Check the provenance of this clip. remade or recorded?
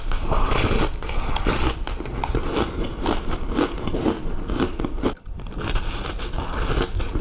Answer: recorded